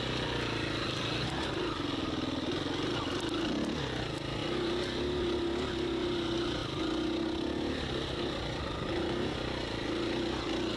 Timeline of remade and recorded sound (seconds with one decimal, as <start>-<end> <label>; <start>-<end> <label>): 0.0-10.8 recorded